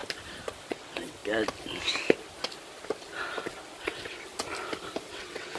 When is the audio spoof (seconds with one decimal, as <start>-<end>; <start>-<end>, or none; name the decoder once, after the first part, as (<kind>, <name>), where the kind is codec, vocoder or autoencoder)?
0.7-1.2 (vocoder, WaveNeXt); 3.8-4.3; 5.1-5.6